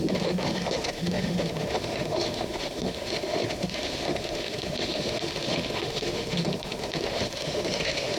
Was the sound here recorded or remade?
remade